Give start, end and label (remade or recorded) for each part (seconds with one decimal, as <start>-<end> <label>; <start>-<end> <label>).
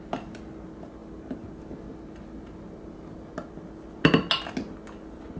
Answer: 0.0-5.4 recorded